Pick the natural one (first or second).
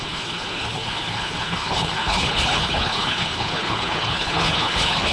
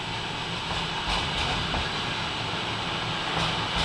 second